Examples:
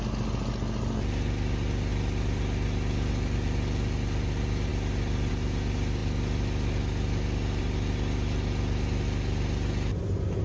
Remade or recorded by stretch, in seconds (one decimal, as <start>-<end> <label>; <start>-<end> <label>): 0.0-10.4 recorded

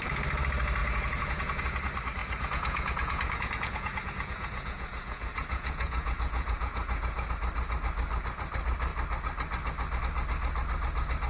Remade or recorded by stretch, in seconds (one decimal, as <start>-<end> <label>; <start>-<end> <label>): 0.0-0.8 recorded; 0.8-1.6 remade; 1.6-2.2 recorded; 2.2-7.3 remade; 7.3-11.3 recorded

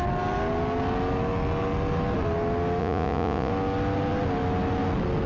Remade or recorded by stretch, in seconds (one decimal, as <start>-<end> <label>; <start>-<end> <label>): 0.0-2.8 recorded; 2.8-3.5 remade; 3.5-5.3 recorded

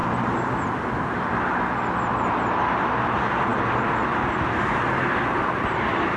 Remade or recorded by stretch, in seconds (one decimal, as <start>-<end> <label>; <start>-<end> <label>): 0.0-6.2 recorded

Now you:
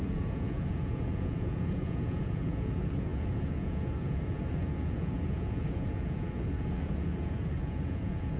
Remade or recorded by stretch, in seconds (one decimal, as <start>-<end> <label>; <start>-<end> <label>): 0.0-8.4 remade

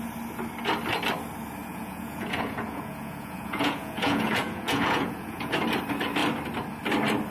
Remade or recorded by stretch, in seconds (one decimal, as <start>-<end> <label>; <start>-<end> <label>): 0.0-1.6 recorded; 1.6-5.5 remade; 5.5-7.3 recorded